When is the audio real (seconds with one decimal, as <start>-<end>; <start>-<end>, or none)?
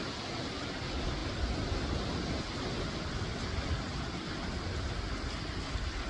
0.0-6.1